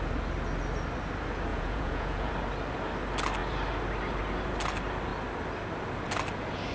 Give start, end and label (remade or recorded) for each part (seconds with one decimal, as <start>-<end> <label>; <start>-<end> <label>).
0.0-1.5 recorded; 1.5-2.3 remade; 2.3-6.7 recorded